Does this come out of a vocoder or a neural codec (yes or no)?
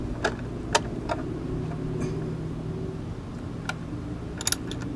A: no